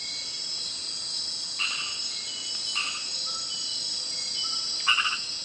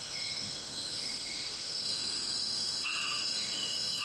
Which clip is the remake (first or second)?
second